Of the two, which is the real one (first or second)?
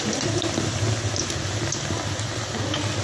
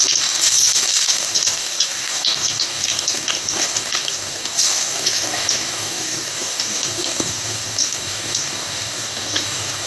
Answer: first